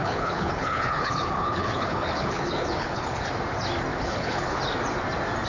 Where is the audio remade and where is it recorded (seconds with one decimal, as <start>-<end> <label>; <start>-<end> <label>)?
0.0-3.3 remade; 3.3-3.9 recorded; 3.9-4.6 remade; 4.6-5.5 recorded